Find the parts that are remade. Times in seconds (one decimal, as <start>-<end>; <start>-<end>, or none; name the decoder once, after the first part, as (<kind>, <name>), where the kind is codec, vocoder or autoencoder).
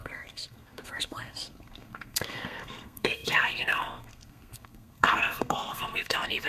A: 0.0-6.5 (codec, SNAC)